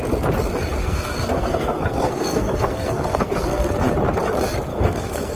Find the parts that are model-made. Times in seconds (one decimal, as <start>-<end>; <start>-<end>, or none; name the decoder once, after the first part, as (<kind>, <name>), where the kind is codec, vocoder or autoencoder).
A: 0.8-3.7 (codec, SNAC); 4.7-5.4